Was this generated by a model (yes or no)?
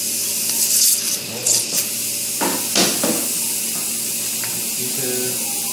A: no